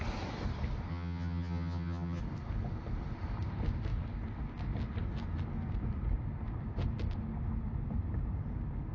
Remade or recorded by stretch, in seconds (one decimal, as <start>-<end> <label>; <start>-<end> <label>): 0.0-0.9 recorded; 0.9-2.2 remade; 2.2-8.9 recorded